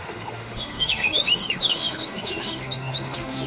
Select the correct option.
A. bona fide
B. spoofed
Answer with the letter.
B